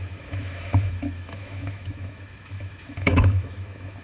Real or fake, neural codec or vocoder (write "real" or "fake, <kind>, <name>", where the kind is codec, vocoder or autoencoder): fake, autoencoder, DAC-VAE